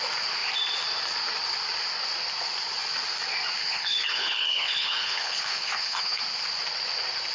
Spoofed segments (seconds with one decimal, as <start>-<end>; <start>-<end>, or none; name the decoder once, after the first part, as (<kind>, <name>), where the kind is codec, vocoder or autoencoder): 3.6-6.2 (codec, HILCodec)